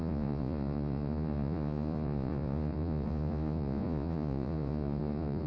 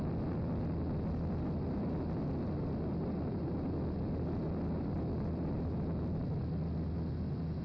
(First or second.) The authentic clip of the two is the second